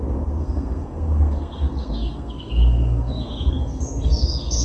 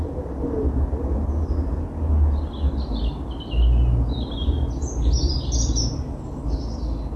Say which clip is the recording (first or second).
second